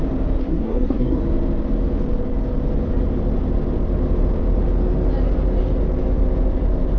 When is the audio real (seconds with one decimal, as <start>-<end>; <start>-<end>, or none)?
0.0-0.4; 1.2-7.0